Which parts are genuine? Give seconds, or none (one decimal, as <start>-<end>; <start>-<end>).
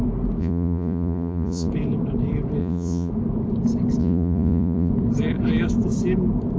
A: 0.0-0.4; 1.7-2.6; 3.1-4.0; 4.9-6.6